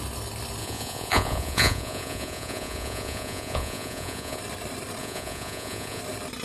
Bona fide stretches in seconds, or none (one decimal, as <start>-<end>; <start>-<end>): 0.0-0.6; 4.4-5.0; 6.0-6.4